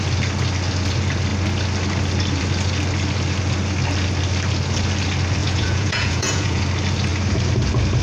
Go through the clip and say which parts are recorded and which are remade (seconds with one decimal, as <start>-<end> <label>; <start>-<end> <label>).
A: 0.0-5.4 recorded; 5.4-6.6 remade; 6.6-8.0 recorded

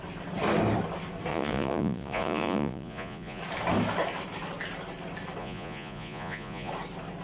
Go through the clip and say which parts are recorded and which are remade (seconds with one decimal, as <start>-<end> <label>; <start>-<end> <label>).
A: 0.0-1.3 recorded; 1.3-3.4 remade; 3.4-5.4 recorded; 5.4-6.7 remade; 6.7-7.2 recorded

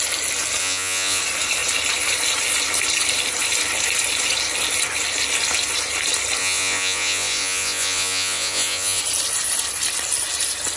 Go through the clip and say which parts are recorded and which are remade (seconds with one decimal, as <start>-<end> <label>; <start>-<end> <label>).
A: 0.0-0.6 recorded; 0.6-1.2 remade; 1.2-6.4 recorded; 6.4-9.0 remade; 9.0-10.8 recorded

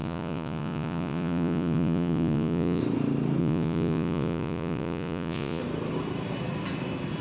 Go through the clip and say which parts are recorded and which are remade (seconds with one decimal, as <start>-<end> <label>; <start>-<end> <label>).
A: 0.0-2.8 remade; 2.8-3.4 recorded; 3.4-5.6 remade; 5.6-7.2 recorded

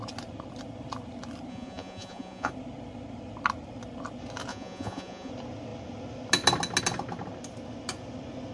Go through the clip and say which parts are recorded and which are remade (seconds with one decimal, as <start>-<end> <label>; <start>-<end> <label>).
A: 0.0-1.5 recorded; 1.5-2.5 remade; 2.5-4.5 recorded; 4.5-5.3 remade; 5.3-8.5 recorded

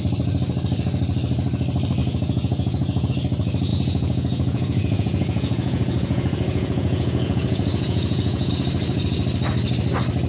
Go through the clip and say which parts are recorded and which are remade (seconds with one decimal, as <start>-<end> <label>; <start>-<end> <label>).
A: 0.0-2.0 recorded; 2.0-3.1 remade; 3.1-3.7 recorded; 3.7-8.5 remade; 8.5-10.3 recorded